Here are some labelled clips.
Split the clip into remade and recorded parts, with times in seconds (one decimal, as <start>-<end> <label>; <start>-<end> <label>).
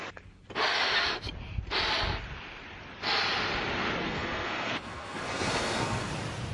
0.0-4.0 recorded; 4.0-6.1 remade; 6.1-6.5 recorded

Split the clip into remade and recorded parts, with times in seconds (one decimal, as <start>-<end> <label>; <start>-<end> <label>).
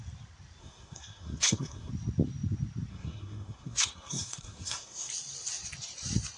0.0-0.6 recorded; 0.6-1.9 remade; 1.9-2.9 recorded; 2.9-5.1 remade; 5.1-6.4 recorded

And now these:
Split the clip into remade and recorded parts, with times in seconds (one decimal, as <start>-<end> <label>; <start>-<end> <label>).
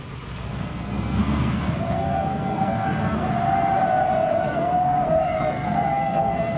0.0-0.5 recorded; 0.5-3.3 remade; 3.3-4.3 recorded; 4.3-6.6 remade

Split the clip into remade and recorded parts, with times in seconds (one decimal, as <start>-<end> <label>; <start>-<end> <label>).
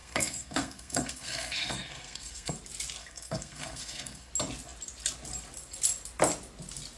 0.0-2.5 remade; 2.5-3.0 recorded; 3.0-4.3 remade; 4.3-7.0 recorded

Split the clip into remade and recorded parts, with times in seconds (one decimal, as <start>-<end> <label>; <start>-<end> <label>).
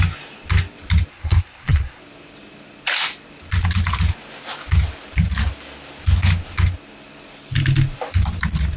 0.0-1.1 recorded; 1.1-2.0 remade; 2.0-8.8 recorded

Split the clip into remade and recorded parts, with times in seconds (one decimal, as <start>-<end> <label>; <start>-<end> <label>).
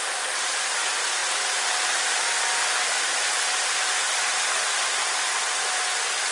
0.0-6.3 recorded